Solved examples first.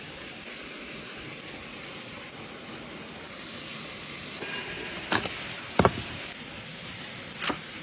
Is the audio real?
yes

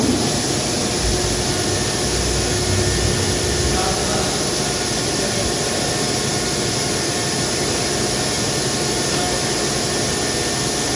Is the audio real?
yes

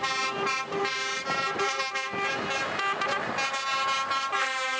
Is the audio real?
yes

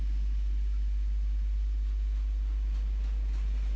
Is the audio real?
yes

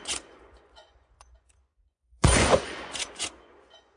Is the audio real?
no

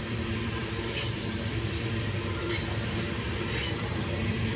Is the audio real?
no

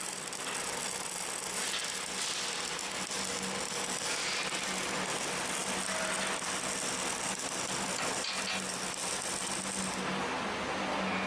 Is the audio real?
yes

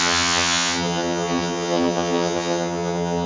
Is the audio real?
no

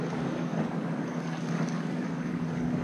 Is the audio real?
no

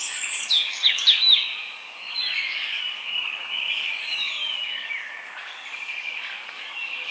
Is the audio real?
no